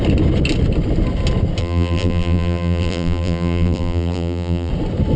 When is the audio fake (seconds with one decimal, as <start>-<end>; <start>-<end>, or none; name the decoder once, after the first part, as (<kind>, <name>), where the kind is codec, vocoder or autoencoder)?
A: 1.6-4.7 (vocoder, BigVGAN v2)